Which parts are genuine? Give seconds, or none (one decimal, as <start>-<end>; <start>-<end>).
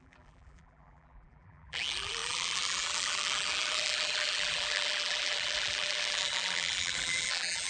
none